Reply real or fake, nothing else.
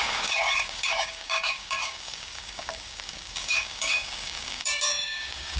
fake